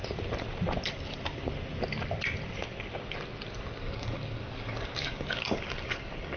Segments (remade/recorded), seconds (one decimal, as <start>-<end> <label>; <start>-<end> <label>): 0.0-3.8 recorded; 3.8-6.4 remade